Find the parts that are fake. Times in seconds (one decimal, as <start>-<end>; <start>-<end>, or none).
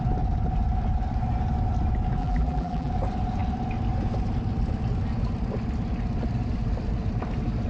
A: 2.2-2.9